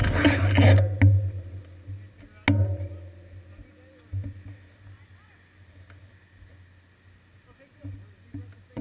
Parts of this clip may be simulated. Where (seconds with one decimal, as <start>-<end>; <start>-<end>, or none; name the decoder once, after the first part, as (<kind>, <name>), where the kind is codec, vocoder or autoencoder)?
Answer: none